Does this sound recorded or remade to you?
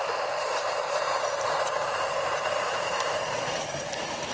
remade